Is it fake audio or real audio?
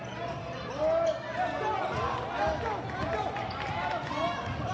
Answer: real